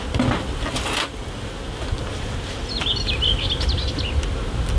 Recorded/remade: recorded